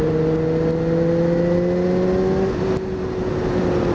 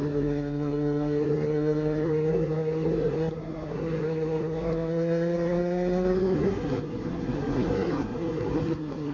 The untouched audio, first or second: first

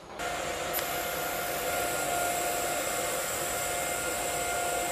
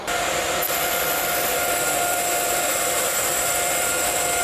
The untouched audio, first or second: first